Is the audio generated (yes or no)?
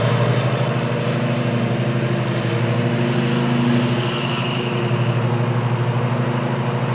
no